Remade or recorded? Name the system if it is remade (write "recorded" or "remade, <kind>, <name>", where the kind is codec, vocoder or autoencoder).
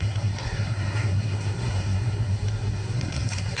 remade, codec, SNAC